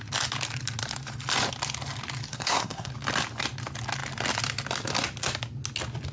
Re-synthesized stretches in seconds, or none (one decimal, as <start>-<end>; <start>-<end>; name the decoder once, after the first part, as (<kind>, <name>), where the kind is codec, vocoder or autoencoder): 2.3-2.9 (codec, SNAC)